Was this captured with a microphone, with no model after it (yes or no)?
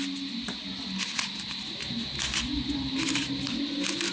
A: yes